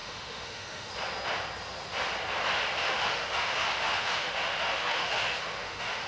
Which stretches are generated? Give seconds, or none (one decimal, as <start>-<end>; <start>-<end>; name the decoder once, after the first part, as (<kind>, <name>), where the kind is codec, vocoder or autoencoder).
0.0-0.9 (autoencoder, DAC-VAE); 2.8-6.1